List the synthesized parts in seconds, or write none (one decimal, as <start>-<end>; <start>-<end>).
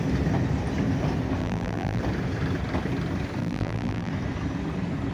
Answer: 1.4-2.0; 3.4-4.1